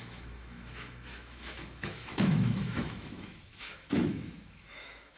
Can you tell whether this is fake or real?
fake